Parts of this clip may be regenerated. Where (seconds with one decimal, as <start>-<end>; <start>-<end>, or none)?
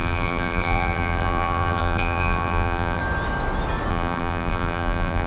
0.0-3.0; 3.9-5.3